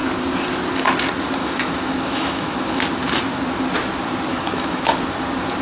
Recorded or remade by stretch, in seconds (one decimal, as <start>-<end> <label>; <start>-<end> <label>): 0.0-1.4 recorded; 1.4-2.7 remade; 2.7-4.3 recorded; 4.3-4.8 remade; 4.8-5.6 recorded